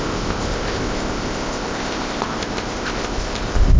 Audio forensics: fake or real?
fake